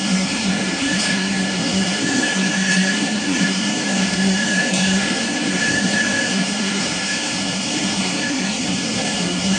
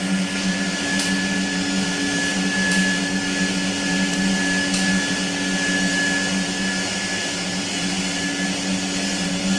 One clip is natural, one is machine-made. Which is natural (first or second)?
second